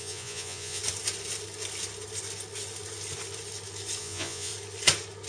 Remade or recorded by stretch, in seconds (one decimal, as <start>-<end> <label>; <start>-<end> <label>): 0.0-0.8 remade; 0.8-4.0 recorded; 4.0-4.5 remade; 4.5-5.3 recorded